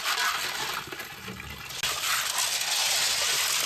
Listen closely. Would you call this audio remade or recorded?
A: recorded